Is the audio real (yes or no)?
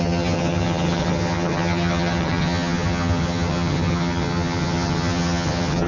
no